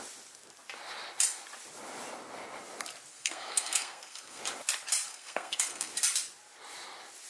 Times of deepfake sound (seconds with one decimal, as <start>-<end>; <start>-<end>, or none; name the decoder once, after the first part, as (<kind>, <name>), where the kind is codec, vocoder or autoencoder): 3.1-4.4 (codec, SNAC); 5.1-5.9